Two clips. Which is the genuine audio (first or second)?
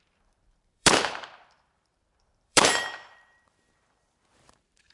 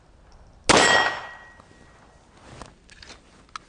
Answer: second